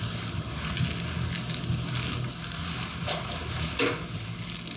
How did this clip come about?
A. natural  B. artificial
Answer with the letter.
A